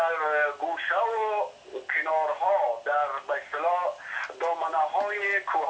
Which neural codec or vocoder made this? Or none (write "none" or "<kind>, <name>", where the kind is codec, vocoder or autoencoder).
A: none